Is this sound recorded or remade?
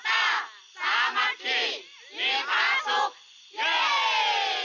recorded